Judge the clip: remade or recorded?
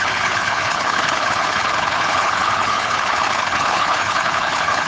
remade